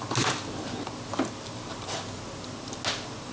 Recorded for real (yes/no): yes